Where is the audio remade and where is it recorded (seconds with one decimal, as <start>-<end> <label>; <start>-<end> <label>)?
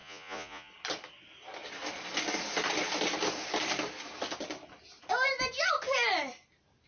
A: 0.0-0.7 remade; 0.7-6.9 recorded